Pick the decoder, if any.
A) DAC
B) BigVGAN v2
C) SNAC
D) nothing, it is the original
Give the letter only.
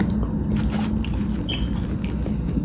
D